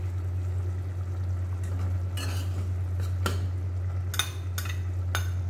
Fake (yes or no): no